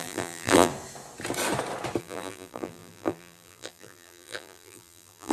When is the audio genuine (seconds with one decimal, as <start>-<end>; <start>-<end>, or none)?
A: 0.7-2.0